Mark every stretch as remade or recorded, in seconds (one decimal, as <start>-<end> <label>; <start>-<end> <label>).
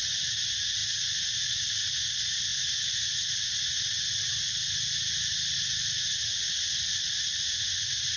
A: 0.0-8.2 recorded